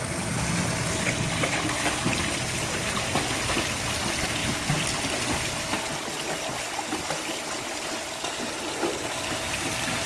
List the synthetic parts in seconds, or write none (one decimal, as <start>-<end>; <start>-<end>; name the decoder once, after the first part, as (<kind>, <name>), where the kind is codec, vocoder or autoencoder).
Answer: none